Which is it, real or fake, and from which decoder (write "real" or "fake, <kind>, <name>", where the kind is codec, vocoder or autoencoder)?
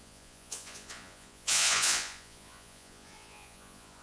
fake, vocoder, Vocos